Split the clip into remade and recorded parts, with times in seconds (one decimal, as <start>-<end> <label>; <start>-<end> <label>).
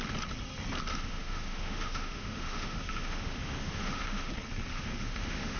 0.0-0.9 recorded; 0.9-4.3 remade; 4.3-4.7 recorded; 4.7-5.6 remade